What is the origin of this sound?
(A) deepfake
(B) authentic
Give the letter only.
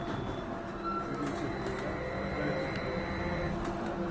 B